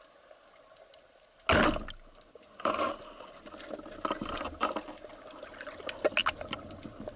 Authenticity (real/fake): real